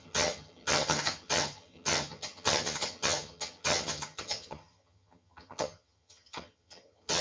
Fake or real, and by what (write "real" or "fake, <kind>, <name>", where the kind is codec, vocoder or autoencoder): fake, vocoder, HiFi-GAN